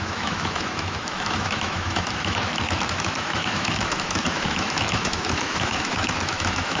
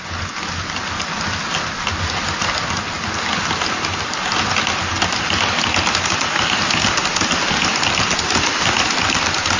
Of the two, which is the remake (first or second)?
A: first